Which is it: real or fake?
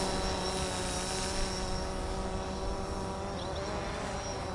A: real